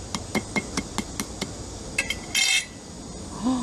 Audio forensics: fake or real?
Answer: real